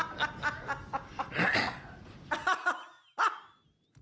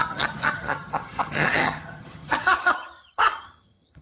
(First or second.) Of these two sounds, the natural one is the first